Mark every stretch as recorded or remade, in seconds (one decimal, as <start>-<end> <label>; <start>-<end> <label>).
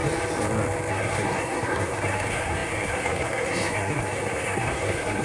0.0-0.9 recorded; 0.9-5.2 remade